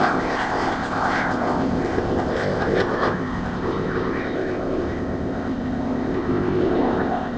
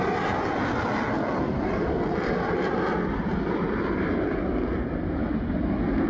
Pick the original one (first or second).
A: second